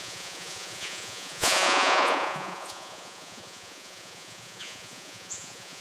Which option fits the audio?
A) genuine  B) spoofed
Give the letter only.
B